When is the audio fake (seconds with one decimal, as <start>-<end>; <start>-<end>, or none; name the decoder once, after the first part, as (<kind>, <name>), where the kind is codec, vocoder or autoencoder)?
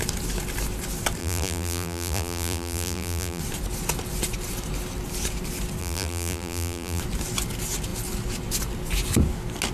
1.2-3.4 (vocoder, BigVGAN v2); 5.8-7.0